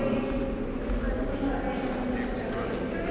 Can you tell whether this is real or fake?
real